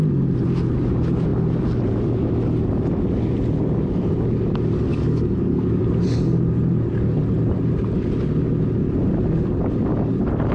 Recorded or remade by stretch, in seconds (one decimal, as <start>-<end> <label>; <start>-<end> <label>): 0.0-4.9 recorded; 4.9-5.8 remade; 5.8-10.5 recorded